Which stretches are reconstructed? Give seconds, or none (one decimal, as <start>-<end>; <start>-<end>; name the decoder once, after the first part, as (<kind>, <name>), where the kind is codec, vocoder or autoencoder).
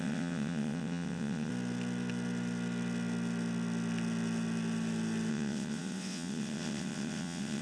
0.0-1.5 (vocoder, WaveNeXt); 5.3-7.6